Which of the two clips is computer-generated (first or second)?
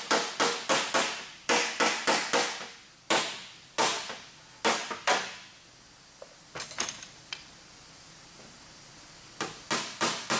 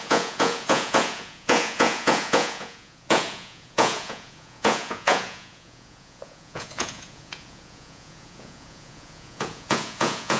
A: second